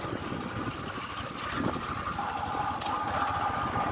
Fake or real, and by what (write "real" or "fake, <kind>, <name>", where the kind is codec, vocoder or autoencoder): real